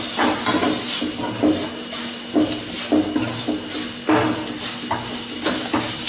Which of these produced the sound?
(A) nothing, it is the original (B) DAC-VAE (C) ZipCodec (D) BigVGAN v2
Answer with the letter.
A